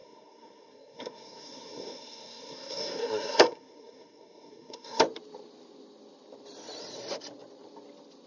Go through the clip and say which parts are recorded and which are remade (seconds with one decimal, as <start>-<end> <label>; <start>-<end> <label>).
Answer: 0.0-5.0 remade; 5.0-8.3 recorded

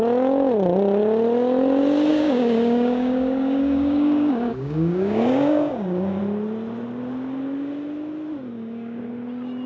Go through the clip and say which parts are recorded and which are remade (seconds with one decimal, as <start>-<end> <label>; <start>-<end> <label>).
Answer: 0.0-2.1 recorded; 2.1-6.2 remade; 6.2-8.5 recorded; 8.5-9.0 remade; 9.0-9.7 recorded

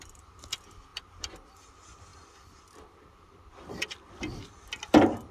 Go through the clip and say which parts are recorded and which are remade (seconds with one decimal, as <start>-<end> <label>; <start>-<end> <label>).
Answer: 0.0-5.3 recorded

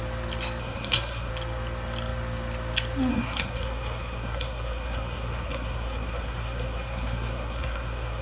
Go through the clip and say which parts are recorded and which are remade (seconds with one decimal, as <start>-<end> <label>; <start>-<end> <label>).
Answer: 0.0-0.6 recorded; 0.6-1.3 remade; 1.3-3.1 recorded; 3.1-8.2 remade

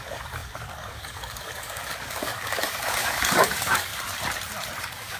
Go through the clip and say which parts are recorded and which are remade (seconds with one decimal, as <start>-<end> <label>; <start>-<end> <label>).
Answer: 0.0-3.9 remade; 3.9-4.8 recorded; 4.8-5.2 remade

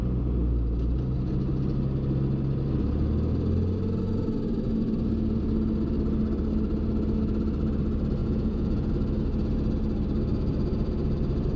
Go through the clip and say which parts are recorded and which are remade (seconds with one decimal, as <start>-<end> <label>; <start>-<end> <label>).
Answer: 0.0-8.2 recorded; 8.2-8.9 remade; 8.9-11.6 recorded

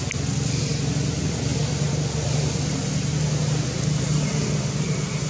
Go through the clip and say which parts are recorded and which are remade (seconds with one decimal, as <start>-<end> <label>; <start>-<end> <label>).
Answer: 0.0-5.3 recorded